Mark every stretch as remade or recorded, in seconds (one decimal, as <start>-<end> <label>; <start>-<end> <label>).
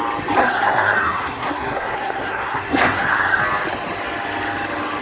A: 0.0-0.4 recorded; 0.4-3.4 remade; 3.4-5.0 recorded